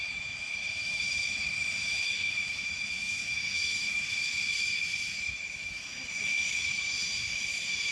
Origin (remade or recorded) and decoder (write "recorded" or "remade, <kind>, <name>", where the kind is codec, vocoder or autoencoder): remade, autoencoder, DAC-VAE